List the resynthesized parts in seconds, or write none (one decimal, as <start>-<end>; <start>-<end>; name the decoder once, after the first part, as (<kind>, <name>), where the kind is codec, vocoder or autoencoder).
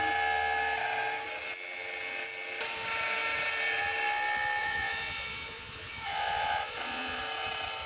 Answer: 4.6-7.2 (vocoder, Vocos)